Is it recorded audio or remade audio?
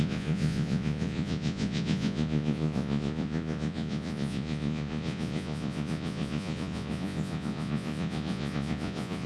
remade